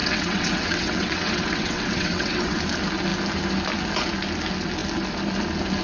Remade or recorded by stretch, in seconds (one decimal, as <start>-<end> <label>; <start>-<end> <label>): 0.0-2.6 remade; 2.6-5.8 recorded